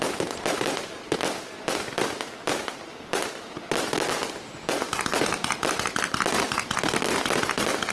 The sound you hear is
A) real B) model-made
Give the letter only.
A